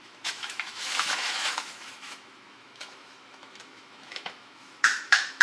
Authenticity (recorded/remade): remade